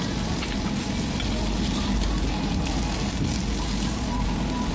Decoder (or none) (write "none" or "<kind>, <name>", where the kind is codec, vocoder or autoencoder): none